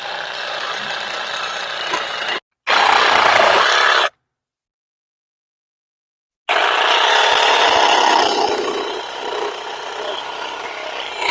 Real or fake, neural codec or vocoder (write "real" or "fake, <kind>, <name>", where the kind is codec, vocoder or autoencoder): real